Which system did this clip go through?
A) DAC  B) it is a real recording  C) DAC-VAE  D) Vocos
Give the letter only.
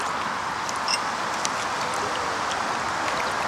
B